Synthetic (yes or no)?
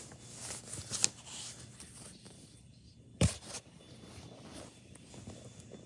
no